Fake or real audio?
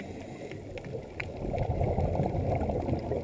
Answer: real